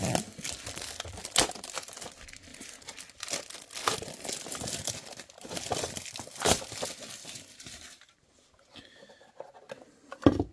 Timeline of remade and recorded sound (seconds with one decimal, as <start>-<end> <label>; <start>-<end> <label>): 0.0-2.5 recorded; 2.5-3.0 remade; 3.0-7.2 recorded; 7.2-8.6 remade; 8.6-10.5 recorded